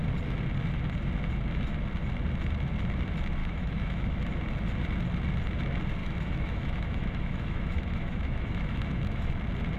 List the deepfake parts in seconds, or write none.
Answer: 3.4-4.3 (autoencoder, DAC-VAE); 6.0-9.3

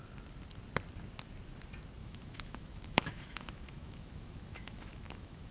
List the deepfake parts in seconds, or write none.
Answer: 2.0-5.5 (autoencoder, DAC-VAE)

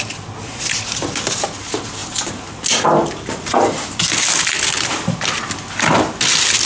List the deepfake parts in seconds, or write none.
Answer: none

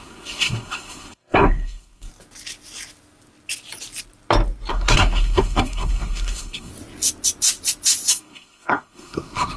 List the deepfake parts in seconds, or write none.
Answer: 0.0-2.1 (codec, SNAC); 4.7-6.7; 8.1-9.6

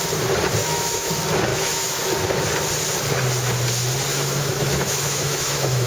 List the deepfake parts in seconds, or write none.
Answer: 0.6-1.1 (autoencoder, DAC-VAE); 1.5-2.0; 4.1-5.9

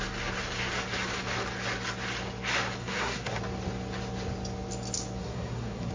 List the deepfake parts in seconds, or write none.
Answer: 2.8-3.4 (codec, SNAC); 5.2-5.9

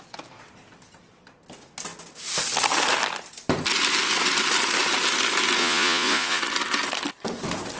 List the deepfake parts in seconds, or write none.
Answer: 5.6-6.4 (vocoder, Vocos)